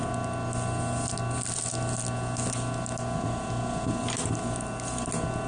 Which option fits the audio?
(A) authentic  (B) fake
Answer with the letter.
A